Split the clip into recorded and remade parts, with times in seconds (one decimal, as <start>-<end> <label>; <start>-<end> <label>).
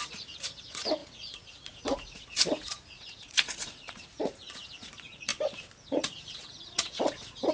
0.0-5.3 remade; 5.3-5.8 recorded; 5.8-7.5 remade